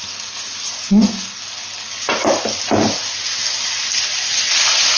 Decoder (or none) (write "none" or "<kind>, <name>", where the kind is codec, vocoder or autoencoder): none